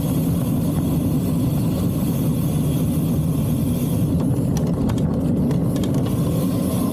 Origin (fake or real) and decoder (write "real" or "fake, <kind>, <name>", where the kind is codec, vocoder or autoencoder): real